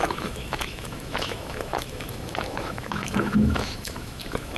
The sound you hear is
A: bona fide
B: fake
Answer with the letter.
B